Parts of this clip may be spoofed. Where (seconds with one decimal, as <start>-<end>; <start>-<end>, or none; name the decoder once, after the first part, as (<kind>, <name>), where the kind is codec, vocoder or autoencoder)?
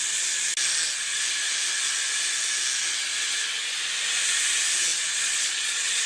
4.9-6.1 (vocoder, Vocos)